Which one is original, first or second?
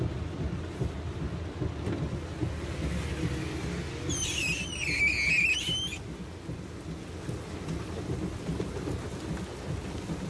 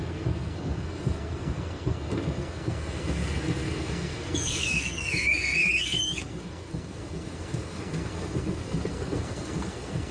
first